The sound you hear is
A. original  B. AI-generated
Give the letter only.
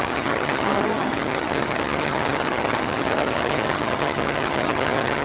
B